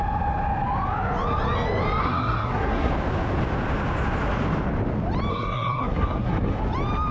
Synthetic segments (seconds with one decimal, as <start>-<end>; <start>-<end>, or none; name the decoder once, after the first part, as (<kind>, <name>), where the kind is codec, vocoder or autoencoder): 2.0-2.9 (codec, SNAC); 5.3-6.6